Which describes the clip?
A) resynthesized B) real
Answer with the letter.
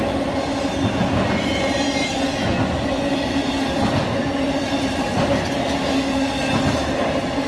B